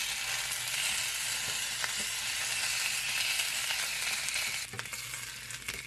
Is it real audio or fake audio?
real